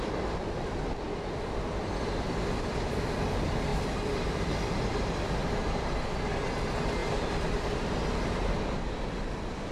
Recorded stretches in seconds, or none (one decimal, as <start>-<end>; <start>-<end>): 0.0-3.7; 4.3-5.4; 5.9-9.7